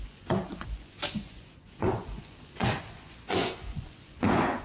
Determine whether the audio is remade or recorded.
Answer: remade